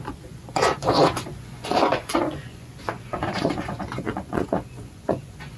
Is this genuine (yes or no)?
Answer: no